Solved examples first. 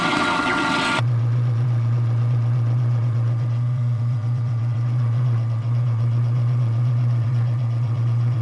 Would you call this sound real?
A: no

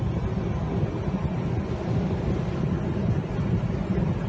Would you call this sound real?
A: yes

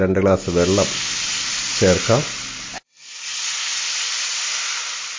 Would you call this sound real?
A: yes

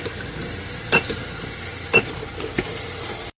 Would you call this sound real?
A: no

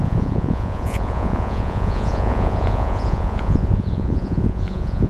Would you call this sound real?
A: no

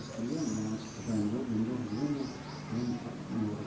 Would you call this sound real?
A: yes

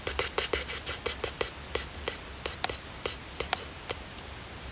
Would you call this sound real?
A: yes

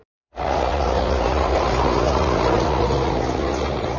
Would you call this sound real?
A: no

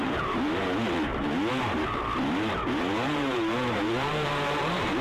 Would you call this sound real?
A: no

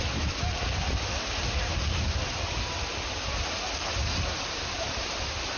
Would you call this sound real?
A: yes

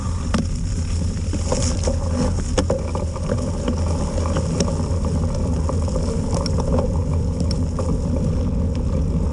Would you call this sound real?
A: yes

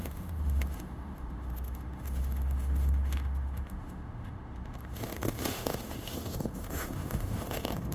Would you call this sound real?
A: no